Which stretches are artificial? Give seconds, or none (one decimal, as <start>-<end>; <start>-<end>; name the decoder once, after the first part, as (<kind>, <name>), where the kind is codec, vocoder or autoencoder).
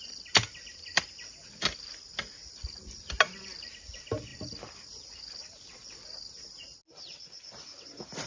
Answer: none